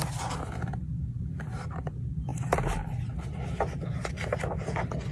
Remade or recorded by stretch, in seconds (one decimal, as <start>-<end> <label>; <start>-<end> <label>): 0.0-5.1 recorded